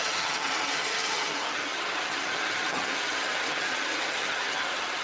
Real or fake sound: fake